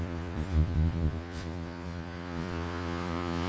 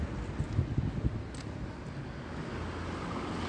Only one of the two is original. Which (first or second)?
second